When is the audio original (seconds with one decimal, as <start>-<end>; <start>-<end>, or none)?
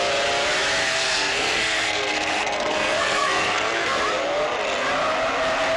0.0-0.8; 4.0-5.8